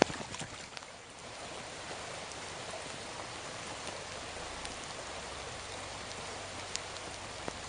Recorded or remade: recorded